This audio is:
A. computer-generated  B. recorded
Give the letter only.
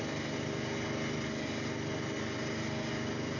B